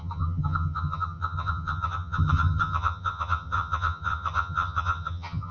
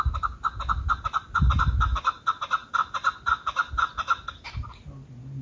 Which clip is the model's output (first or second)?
first